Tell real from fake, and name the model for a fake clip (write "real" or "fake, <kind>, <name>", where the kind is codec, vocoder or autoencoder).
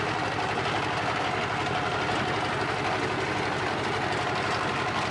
real